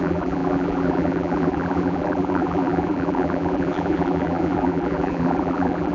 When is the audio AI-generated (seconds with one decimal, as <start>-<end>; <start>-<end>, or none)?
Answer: 0.0-5.9